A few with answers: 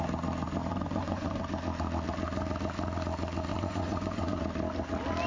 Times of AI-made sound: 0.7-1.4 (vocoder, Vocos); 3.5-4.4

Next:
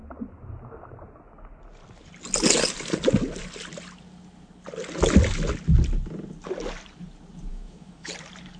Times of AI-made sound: 7.5-8.1 (autoencoder, DAC-VAE)

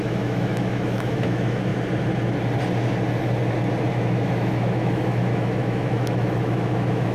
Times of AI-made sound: 0.0-1.7 (autoencoder, DAC-VAE); 3.9-7.1

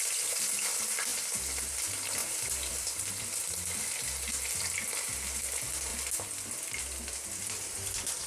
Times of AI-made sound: 2.2-3.1 (vocoder, BigVGAN v2)

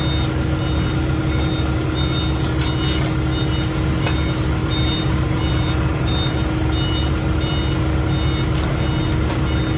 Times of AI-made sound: 4.6-6.5 (vocoder, BigVGAN v2)